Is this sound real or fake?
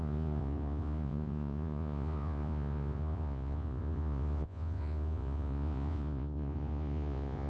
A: fake